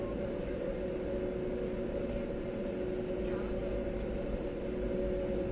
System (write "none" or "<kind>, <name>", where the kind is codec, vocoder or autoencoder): none